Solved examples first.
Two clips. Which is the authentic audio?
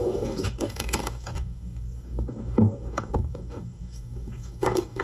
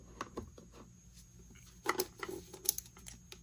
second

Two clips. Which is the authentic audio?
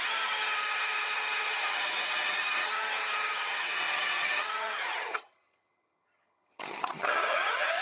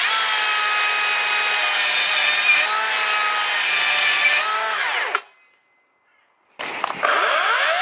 second